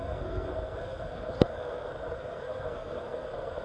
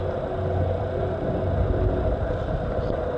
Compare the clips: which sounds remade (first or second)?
first